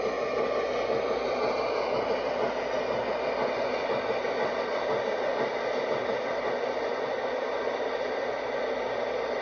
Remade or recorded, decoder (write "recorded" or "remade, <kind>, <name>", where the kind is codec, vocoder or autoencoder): recorded